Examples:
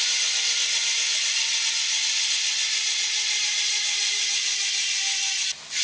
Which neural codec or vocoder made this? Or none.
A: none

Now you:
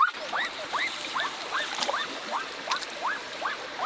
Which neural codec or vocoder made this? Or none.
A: none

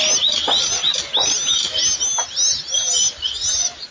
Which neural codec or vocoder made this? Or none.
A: none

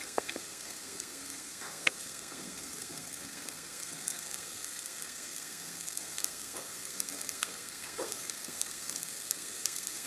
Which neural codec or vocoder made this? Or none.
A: codec, SNAC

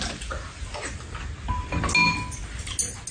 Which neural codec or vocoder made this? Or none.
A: none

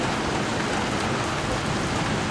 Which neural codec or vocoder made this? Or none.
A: none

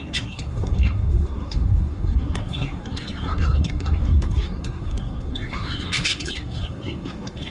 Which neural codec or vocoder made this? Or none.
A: codec, SNAC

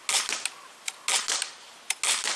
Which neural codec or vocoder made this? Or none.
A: none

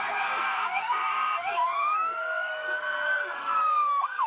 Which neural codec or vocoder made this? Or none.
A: codec, SNAC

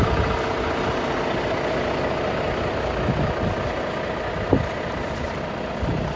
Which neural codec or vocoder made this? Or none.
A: none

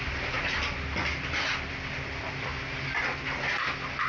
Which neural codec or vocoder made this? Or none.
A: none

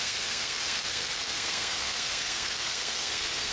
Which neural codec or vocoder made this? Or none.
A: codec, SNAC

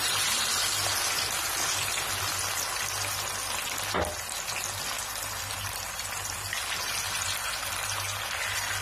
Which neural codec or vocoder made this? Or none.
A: none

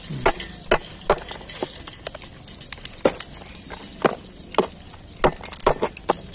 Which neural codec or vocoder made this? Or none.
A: none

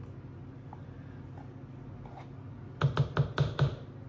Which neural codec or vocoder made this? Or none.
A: none